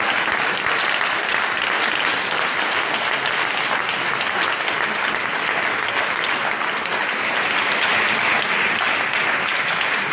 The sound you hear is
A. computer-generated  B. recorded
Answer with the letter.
B